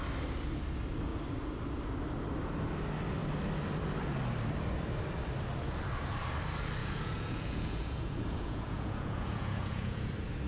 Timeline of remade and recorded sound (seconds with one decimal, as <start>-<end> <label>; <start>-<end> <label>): 0.0-6.8 recorded; 6.8-10.1 remade; 10.1-10.5 recorded